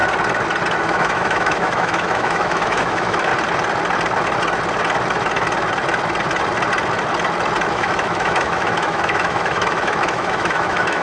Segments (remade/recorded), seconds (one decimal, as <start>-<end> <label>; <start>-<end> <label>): 0.0-0.8 recorded; 0.8-3.3 remade; 3.3-7.7 recorded; 7.7-11.0 remade